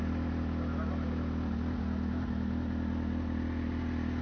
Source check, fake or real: real